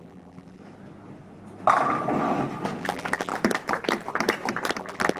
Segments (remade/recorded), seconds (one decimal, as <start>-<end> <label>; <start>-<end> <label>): 0.0-0.6 remade; 0.6-2.8 recorded; 2.8-3.3 remade; 3.3-4.8 recorded; 4.8-5.2 remade